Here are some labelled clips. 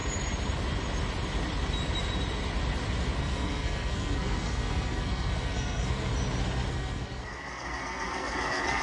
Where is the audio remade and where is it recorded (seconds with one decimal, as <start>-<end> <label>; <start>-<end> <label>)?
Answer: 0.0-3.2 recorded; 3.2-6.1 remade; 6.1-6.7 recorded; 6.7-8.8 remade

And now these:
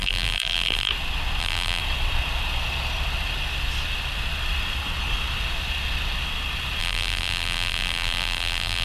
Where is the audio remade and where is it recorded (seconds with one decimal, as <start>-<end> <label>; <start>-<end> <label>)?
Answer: 0.0-0.9 remade; 0.9-1.4 recorded; 1.4-1.8 remade; 1.8-6.8 recorded; 6.8-8.8 remade

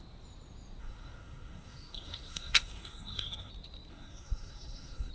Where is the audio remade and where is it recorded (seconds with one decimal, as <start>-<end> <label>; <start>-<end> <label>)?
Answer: 0.0-0.8 recorded; 0.8-3.5 remade; 3.5-3.9 recorded; 3.9-5.1 remade